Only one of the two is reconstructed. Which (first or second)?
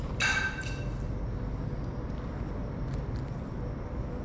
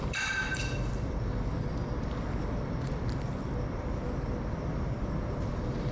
second